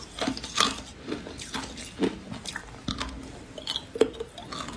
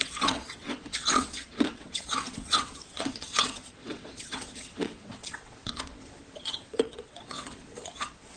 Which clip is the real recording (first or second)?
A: first